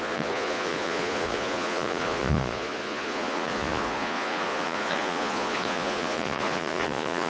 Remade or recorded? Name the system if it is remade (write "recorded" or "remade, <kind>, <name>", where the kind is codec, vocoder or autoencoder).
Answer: remade, vocoder, Vocos